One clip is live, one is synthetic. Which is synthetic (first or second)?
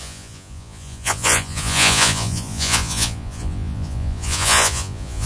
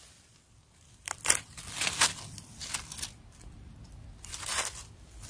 first